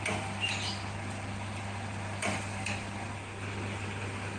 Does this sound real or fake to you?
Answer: real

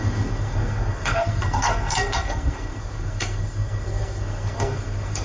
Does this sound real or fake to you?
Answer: fake